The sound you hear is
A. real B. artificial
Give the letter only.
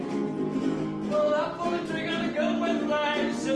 A